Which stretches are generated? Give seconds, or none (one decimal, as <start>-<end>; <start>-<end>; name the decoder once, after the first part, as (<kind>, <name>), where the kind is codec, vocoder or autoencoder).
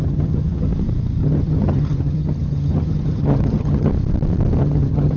0.0-0.7 (vocoder, HiFi-GAN); 1.2-3.9; 4.6-5.2